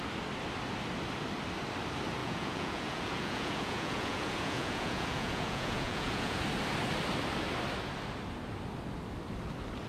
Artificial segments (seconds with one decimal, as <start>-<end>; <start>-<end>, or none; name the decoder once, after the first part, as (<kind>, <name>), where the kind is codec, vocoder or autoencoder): 2.2-6.4 (vocoder, Vocos)